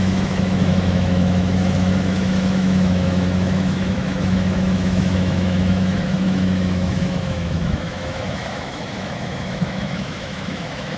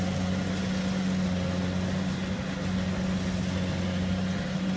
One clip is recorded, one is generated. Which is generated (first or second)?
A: first